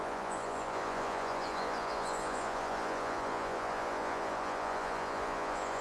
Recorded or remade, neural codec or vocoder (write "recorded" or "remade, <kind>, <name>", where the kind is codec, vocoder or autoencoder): remade, vocoder, Vocos